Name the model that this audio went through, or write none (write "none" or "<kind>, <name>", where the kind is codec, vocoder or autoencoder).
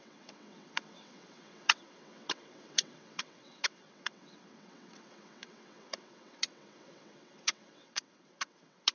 vocoder, WaveNeXt